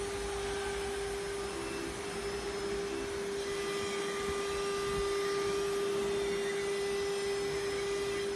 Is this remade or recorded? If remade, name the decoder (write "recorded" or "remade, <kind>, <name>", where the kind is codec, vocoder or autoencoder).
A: recorded